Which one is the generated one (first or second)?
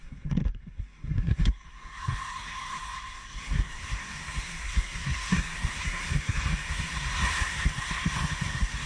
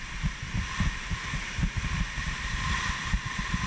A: first